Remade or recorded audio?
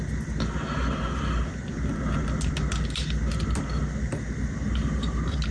recorded